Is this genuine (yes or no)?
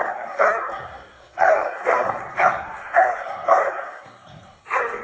no